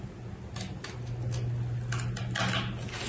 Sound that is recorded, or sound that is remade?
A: recorded